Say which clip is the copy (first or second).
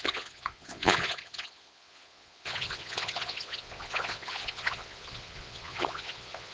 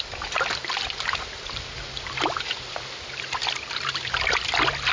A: first